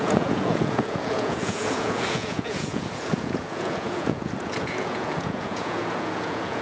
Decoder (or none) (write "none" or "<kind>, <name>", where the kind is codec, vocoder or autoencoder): vocoder, Vocos